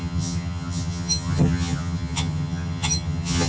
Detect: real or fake fake